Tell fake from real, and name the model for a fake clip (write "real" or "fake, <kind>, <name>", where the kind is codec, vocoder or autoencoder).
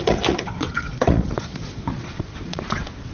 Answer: fake, vocoder, Vocos